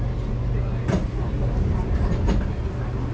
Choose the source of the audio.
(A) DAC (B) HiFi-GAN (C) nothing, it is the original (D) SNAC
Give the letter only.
C